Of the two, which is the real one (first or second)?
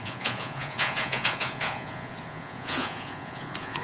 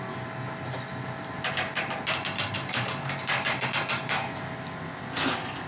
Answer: second